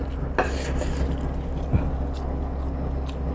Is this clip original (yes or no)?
yes